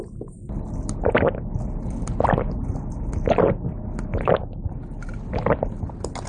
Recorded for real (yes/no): yes